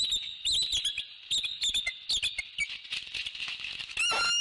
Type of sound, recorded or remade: recorded